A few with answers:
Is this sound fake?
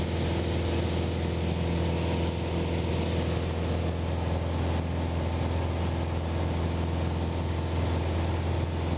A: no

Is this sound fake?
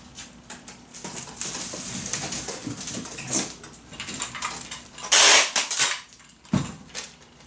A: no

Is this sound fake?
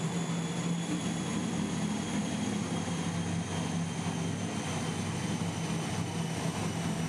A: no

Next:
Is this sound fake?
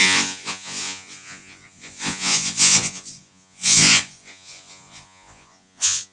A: yes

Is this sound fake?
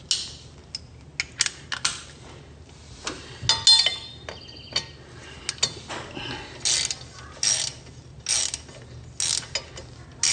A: no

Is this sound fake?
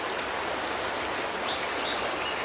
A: no